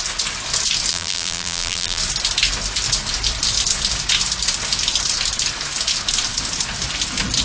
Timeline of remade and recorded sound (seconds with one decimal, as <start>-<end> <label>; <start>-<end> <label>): 0.0-0.9 recorded; 0.9-2.0 remade; 2.0-7.4 recorded